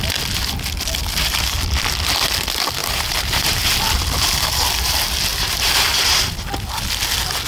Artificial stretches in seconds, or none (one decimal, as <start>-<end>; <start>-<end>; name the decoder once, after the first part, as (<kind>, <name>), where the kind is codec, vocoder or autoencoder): 1.0-1.6 (vocoder, BigVGAN v2); 2.8-3.7; 5.3-6.2